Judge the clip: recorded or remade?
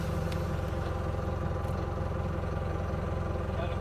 recorded